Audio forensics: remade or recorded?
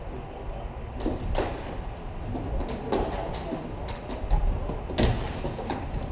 recorded